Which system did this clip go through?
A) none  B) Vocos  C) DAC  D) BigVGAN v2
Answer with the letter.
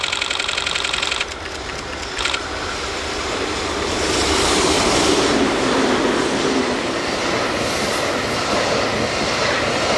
A